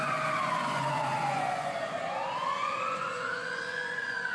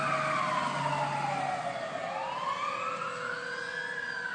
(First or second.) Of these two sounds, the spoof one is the first